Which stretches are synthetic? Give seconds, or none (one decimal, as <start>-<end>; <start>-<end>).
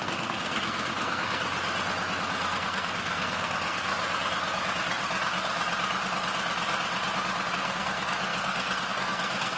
0.0-1.4; 2.4-3.9; 7.5-9.6